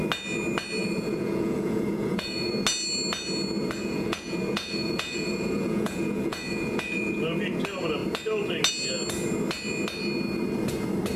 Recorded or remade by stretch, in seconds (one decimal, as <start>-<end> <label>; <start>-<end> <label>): 0.0-0.8 recorded; 0.8-2.5 remade; 2.5-3.8 recorded; 3.8-7.3 remade; 7.3-11.2 recorded